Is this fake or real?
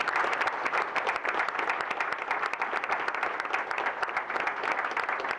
real